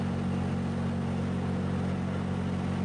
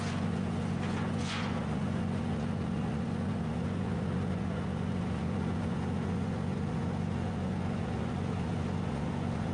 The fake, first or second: second